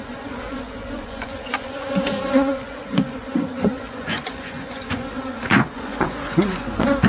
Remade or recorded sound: remade